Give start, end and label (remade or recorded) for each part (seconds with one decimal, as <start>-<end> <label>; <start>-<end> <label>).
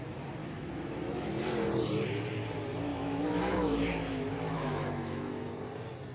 0.0-0.4 recorded; 0.4-1.3 remade; 1.3-2.9 recorded; 2.9-5.5 remade; 5.5-6.1 recorded